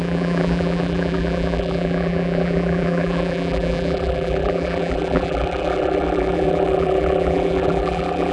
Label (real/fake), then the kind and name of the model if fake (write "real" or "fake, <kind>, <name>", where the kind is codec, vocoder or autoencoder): fake, vocoder, BigVGAN v2